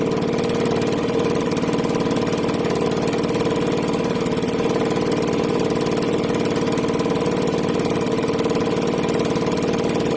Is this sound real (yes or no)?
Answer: yes